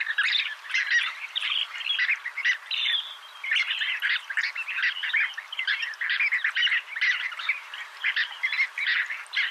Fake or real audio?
real